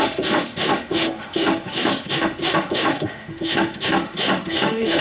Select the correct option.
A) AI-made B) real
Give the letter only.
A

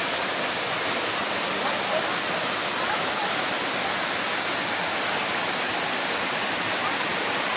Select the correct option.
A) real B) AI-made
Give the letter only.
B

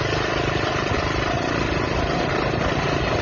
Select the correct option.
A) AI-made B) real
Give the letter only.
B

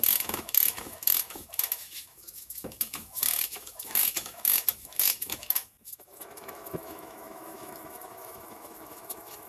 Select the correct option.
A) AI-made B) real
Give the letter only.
A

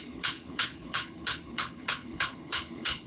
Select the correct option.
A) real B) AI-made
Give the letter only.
B